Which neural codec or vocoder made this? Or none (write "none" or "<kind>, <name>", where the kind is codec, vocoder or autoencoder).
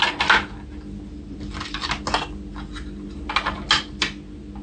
none